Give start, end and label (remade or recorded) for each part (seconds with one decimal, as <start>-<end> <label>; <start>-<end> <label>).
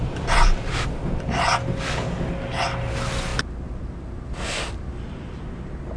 0.0-6.0 recorded